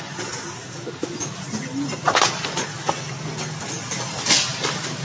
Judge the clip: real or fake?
real